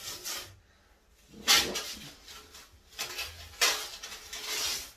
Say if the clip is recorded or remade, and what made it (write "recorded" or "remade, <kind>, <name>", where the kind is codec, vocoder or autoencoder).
recorded